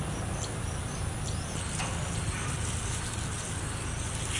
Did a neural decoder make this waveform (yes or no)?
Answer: no